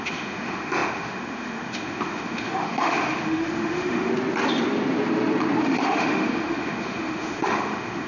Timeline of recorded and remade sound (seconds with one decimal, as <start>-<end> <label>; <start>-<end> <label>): 0.0-4.1 remade; 4.1-5.6 recorded; 5.6-8.1 remade